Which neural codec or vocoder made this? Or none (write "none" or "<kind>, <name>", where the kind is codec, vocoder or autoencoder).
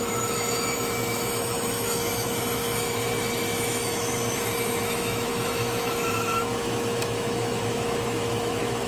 autoencoder, DAC-VAE